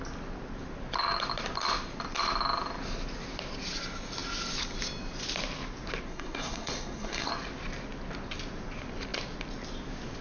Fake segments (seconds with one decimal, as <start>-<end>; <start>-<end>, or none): 6.1-7.3